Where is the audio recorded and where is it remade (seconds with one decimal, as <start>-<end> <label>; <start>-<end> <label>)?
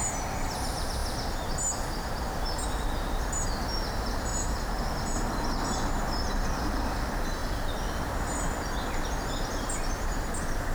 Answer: 0.0-4.3 recorded; 4.3-4.8 remade; 4.8-10.7 recorded